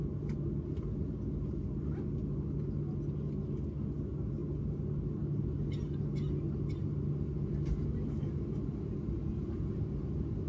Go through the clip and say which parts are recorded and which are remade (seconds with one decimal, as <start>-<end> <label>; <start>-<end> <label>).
0.0-10.5 recorded